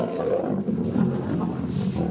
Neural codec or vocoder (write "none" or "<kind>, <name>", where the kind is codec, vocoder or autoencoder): none